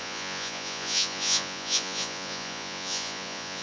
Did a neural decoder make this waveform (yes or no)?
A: yes